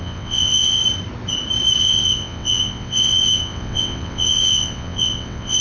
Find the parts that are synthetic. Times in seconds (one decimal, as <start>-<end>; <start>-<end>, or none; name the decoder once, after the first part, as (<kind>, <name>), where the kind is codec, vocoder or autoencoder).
0.0-0.8 (vocoder, WaveNeXt); 1.8-5.6